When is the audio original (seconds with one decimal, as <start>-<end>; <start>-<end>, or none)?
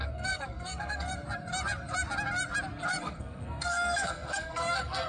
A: 1.1-2.9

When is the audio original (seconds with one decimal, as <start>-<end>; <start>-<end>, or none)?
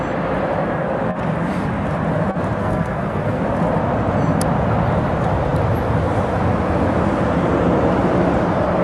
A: 0.0-2.6; 3.4-8.8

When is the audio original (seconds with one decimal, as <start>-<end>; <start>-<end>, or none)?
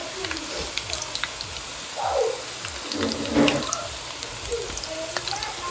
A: 0.0-5.7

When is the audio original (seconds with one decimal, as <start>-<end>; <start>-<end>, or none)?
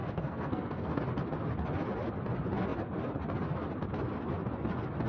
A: 1.0-5.1